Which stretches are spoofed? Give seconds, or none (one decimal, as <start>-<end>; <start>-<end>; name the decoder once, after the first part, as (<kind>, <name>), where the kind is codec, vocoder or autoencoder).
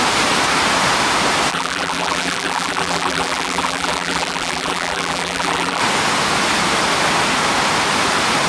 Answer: 1.5-5.8 (vocoder, BigVGAN v2)